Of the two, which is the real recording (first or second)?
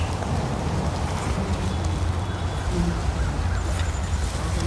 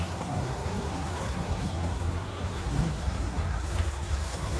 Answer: first